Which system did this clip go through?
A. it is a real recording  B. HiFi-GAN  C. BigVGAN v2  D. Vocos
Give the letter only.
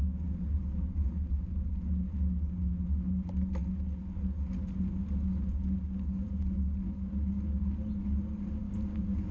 A